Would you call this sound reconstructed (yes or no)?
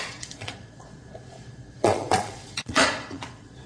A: yes